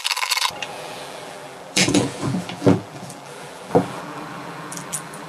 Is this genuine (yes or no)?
no